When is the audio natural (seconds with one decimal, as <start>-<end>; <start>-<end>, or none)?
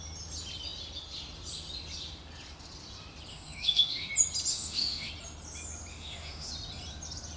0.0-3.3; 4.1-4.5; 5.1-5.9; 6.5-7.4